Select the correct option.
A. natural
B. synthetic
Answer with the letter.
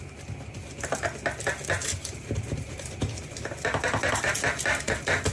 A